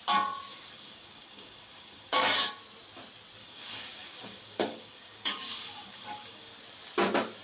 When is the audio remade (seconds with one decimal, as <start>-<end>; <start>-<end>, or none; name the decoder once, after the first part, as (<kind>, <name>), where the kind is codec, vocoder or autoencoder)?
0.5-2.5 (codec, DAC); 3.4-6.5